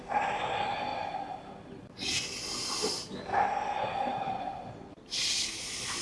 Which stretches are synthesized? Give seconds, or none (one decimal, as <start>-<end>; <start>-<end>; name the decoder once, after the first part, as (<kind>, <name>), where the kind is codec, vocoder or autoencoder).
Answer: 4.1-5.6 (vocoder, BigVGAN v2)